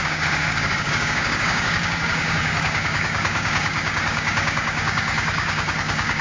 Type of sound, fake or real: fake